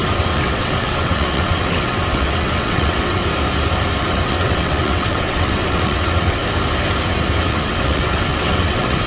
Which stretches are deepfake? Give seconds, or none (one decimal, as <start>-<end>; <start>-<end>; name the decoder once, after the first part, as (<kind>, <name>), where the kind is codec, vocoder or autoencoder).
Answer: 0.0-3.2 (vocoder, WaveNeXt); 4.0-6.4; 7.4-9.1

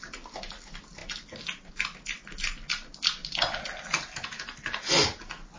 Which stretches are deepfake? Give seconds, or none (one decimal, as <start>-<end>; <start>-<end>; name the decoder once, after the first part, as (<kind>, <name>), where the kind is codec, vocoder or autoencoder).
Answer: none

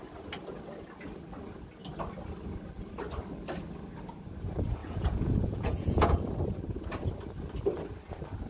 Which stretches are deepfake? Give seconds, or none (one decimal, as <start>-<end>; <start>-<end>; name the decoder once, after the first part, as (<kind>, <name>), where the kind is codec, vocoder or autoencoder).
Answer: 4.8-6.2 (vocoder, Vocos)

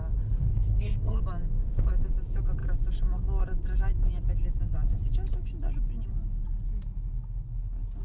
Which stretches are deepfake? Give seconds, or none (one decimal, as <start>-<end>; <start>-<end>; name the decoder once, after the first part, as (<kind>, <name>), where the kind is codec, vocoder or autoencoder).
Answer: 0.5-1.2 (codec, SNAC)

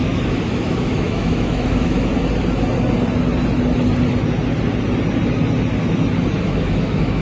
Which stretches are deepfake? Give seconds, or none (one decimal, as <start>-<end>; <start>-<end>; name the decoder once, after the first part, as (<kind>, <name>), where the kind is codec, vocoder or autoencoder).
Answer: 0.0-2.1 (autoencoder, DAC-VAE); 6.4-7.2